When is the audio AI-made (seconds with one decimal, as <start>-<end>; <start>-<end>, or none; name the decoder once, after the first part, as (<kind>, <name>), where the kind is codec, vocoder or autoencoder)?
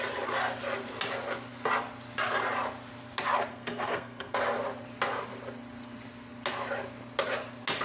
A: 3.5-4.4 (codec, SNAC)